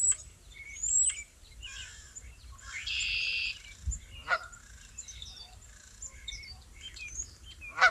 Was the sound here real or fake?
fake